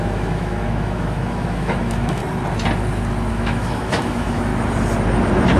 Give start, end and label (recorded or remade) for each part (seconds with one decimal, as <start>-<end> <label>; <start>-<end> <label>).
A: 0.0-2.2 remade; 2.2-3.3 recorded; 3.3-4.5 remade; 4.5-5.6 recorded